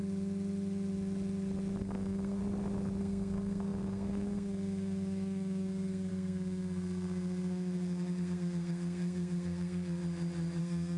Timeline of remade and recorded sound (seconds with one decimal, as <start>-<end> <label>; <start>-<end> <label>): 0.0-1.8 recorded; 1.8-2.4 remade; 2.4-3.0 recorded; 3.0-10.0 remade; 10.0-10.6 recorded; 10.6-11.0 remade